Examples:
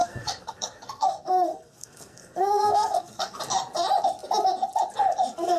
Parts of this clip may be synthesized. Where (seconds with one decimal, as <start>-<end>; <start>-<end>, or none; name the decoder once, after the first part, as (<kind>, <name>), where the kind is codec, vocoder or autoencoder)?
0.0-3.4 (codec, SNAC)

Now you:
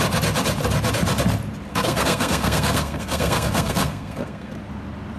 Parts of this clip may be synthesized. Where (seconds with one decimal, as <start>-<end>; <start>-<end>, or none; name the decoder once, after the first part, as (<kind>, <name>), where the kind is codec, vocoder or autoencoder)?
1.7-4.5 (codec, SNAC)

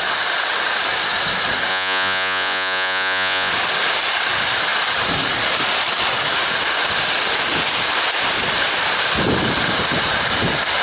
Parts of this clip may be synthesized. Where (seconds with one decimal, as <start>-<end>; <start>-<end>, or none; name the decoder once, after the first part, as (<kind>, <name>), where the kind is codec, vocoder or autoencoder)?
1.7-3.5 (vocoder, Vocos)

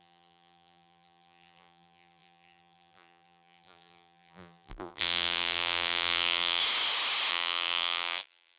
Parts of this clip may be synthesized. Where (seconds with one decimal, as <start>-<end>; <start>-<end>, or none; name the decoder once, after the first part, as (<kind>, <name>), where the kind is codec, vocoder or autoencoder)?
0.0-6.6 (vocoder, BigVGAN v2); 7.3-8.6

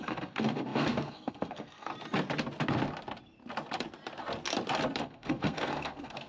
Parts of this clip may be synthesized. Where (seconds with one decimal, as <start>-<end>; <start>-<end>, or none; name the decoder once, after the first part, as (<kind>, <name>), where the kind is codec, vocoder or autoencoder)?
0.0-1.9 (codec, SNAC); 5.0-6.3